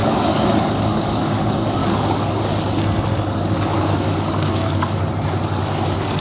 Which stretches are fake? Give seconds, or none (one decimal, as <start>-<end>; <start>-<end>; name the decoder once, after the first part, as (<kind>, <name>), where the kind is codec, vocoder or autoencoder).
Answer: 0.0-1.4 (codec, DAC); 1.8-2.4; 3.1-5.1